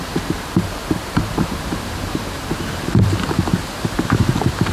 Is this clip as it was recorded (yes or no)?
no